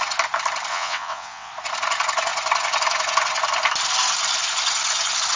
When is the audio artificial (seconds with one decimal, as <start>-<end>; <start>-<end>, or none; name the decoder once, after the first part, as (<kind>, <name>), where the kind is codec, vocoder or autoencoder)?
0.7-1.5 (vocoder, WaveNeXt)